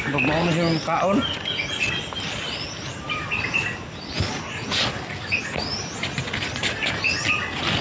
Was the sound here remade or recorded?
recorded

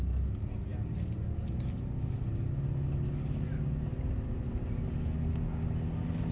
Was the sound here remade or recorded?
recorded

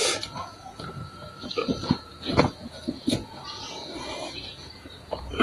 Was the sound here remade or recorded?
remade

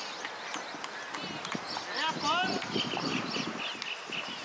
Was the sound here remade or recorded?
recorded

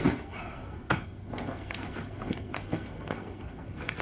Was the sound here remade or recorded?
remade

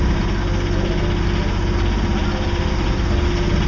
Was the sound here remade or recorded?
recorded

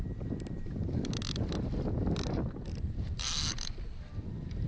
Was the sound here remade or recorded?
recorded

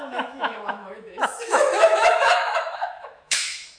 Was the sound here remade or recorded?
remade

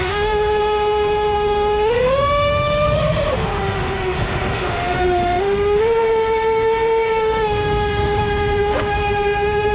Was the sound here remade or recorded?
remade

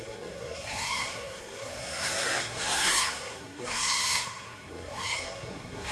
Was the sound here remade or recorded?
remade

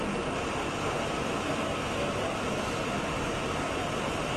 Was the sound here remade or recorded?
recorded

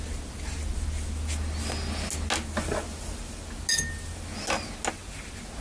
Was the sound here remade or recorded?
recorded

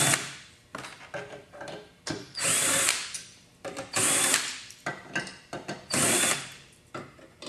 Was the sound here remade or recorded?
remade